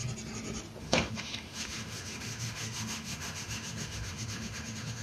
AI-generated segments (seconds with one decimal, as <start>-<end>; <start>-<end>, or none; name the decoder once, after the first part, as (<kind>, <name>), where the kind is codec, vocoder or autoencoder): 0.8-5.0 (autoencoder, DAC-VAE)